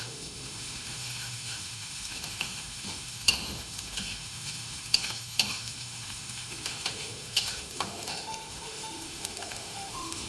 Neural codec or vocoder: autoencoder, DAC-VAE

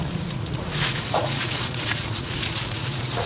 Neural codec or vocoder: vocoder, Vocos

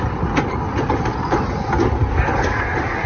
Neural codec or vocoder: none